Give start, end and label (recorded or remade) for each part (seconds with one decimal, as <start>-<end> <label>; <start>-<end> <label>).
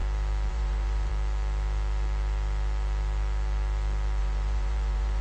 0.0-0.5 recorded; 0.5-1.1 remade; 1.1-4.2 recorded; 4.2-5.2 remade